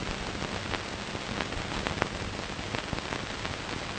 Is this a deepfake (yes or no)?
no